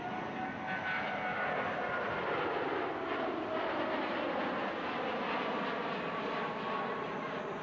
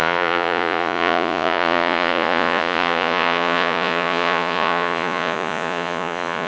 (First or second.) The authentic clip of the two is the first